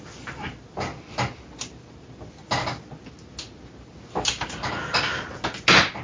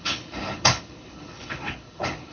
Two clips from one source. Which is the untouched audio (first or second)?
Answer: first